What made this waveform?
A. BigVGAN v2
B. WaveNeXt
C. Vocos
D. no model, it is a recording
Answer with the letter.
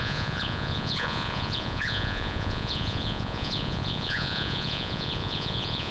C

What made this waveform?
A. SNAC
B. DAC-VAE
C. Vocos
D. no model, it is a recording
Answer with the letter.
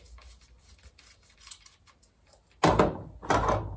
D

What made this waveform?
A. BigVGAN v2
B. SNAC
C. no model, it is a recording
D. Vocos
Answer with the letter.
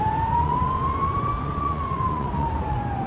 D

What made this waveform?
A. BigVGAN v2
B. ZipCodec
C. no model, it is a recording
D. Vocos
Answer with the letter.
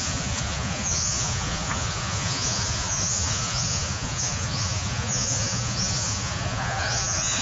D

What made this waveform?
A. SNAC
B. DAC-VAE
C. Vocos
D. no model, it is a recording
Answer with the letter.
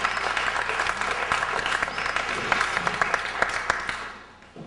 D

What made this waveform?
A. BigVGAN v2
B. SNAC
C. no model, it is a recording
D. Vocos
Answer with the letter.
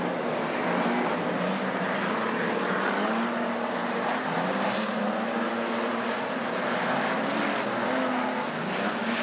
C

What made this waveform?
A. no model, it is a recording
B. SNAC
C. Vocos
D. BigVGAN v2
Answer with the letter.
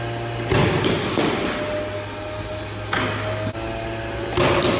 A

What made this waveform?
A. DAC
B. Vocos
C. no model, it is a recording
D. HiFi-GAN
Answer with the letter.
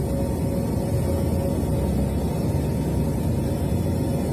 C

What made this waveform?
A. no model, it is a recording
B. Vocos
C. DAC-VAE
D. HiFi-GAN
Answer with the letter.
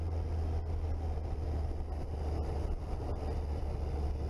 A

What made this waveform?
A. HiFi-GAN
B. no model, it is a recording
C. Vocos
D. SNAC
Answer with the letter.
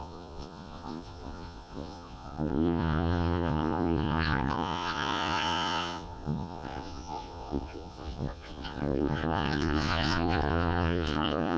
C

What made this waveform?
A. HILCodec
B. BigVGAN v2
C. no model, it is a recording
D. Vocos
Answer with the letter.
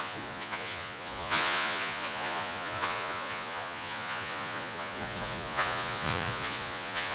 D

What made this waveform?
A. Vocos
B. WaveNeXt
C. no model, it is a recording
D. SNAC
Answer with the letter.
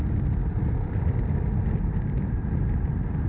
C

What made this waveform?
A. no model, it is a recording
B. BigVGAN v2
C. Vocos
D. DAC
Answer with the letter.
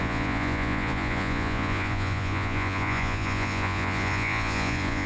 C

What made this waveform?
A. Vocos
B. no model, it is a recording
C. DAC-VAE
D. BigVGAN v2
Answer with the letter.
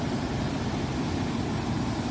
B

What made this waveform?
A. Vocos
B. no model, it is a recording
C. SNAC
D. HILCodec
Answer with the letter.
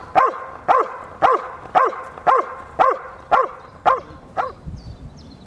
B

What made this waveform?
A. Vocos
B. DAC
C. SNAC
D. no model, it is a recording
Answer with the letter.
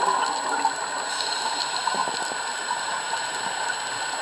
D